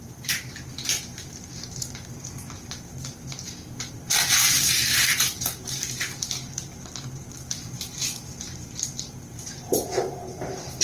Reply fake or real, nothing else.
fake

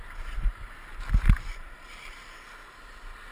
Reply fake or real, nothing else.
fake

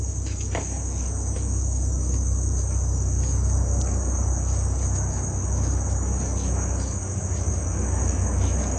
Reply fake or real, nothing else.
fake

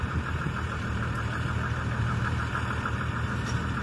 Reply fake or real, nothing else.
fake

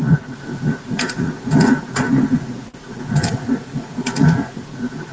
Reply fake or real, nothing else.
fake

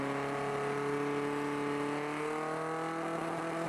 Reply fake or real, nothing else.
real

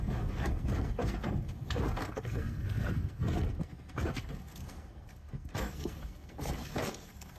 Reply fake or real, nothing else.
fake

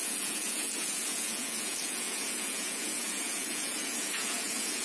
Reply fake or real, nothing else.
fake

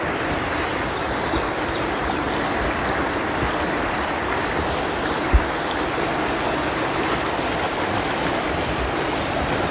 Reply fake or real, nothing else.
real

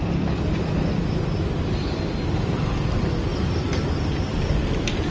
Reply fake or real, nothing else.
real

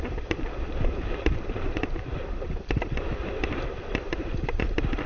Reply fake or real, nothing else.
fake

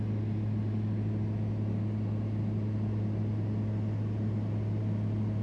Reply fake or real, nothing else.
real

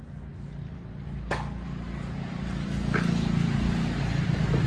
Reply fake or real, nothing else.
real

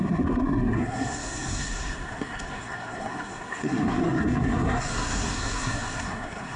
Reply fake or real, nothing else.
fake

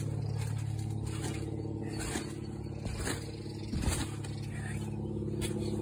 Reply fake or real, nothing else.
real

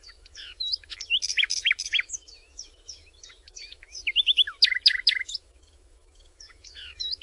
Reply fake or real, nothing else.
fake